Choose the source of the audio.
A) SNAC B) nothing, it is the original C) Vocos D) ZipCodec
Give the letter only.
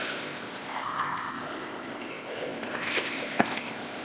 D